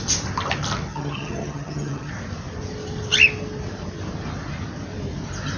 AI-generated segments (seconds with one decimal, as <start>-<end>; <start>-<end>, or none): 0.9-2.1